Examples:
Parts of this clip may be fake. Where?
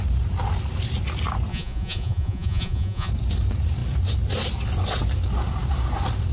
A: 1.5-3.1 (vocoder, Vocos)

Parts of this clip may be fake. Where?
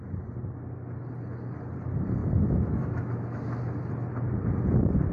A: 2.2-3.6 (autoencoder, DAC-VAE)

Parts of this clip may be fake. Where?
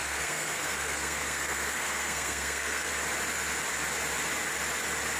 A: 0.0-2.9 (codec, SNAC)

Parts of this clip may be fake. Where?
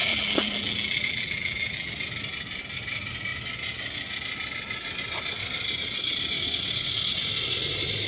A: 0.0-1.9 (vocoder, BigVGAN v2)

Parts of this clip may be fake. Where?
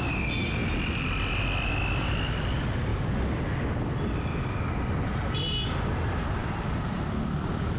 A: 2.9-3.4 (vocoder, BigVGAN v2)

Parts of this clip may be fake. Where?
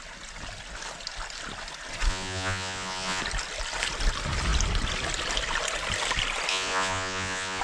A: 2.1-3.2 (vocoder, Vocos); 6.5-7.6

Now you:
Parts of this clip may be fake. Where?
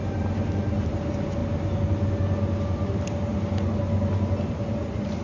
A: none